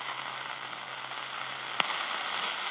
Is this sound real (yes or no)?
yes